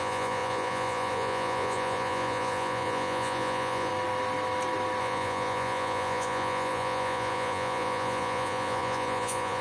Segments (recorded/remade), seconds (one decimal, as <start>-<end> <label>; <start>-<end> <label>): 0.0-3.9 remade; 3.9-5.0 recorded; 5.0-9.6 remade

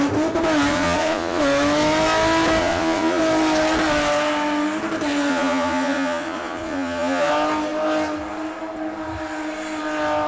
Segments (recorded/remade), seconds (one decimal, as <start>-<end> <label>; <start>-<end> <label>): 0.0-0.7 recorded; 0.7-1.4 remade; 1.4-2.6 recorded; 2.6-3.2 remade; 3.2-5.3 recorded; 5.3-7.3 remade; 7.3-10.3 recorded